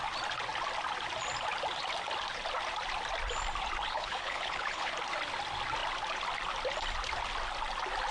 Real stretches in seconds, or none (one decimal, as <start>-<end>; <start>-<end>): 0.0-3.9; 4.9-8.1